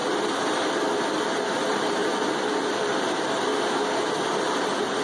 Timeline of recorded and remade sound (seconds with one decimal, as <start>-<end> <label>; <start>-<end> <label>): 0.0-1.2 recorded; 1.2-2.0 remade; 2.0-2.8 recorded; 2.8-3.5 remade; 3.5-4.4 recorded; 4.4-5.0 remade